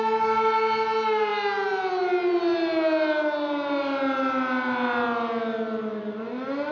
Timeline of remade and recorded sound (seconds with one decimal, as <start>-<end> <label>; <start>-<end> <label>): 0.0-6.7 recorded

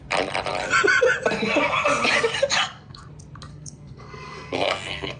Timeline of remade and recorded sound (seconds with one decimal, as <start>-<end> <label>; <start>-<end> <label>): 0.0-2.6 recorded; 2.6-3.1 remade; 3.1-3.5 recorded; 3.5-5.2 remade